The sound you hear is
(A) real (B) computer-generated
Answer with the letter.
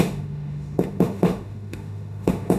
B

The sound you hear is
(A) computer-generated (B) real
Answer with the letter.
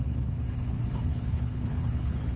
A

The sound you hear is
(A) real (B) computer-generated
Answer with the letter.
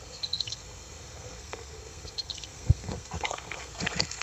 B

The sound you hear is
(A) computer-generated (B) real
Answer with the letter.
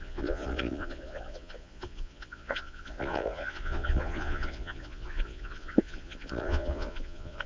A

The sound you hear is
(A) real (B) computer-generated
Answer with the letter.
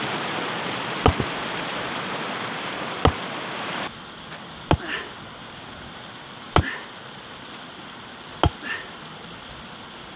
A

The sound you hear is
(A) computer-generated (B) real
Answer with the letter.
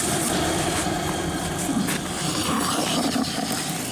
B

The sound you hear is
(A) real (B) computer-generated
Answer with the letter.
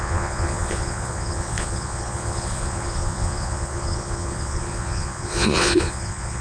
B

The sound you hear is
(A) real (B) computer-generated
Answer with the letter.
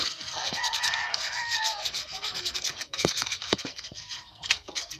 B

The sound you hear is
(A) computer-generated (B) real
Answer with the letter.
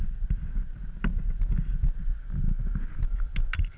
B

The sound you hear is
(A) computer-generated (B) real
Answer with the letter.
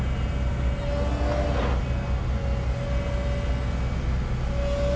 B